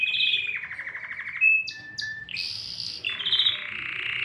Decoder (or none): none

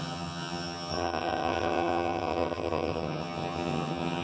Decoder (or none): vocoder, HiFi-GAN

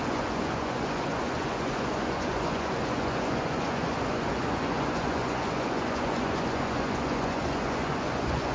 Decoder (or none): vocoder, Vocos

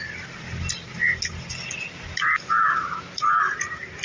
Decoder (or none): none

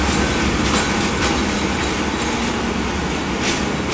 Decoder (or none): none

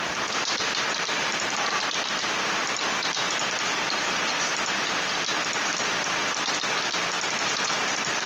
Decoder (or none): vocoder, BigVGAN v2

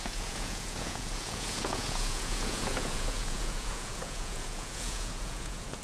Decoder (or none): vocoder, Vocos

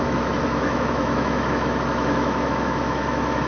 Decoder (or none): autoencoder, DAC-VAE